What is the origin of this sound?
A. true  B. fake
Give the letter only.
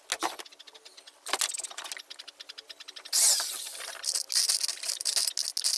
A